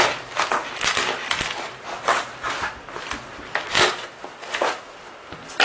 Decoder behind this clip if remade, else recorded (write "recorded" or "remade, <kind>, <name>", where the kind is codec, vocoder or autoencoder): recorded